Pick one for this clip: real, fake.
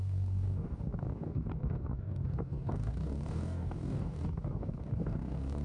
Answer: fake